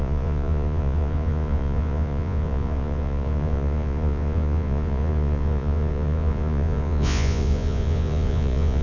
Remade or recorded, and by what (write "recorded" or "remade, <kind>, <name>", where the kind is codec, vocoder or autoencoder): remade, vocoder, Vocos